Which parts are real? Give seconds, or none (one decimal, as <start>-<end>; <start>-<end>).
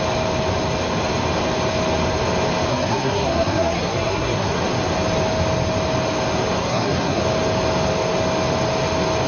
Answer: 0.0-2.7; 4.6-6.6; 7.2-9.3